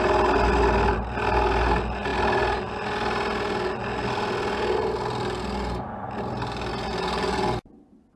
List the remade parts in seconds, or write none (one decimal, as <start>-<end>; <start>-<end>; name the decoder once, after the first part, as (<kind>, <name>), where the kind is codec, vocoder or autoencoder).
none